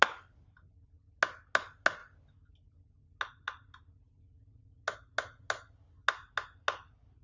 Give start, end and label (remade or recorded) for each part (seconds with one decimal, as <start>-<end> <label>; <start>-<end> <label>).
0.0-7.2 recorded